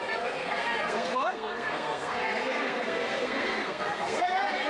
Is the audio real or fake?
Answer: fake